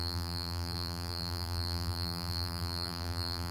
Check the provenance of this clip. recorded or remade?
remade